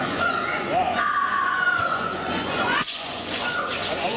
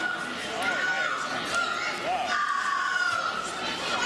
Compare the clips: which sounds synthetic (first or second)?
first